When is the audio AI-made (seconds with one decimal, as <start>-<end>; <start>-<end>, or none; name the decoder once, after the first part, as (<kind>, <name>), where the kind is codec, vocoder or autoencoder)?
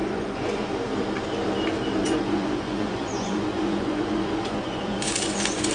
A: 0.0-0.7 (vocoder, Vocos); 2.0-5.7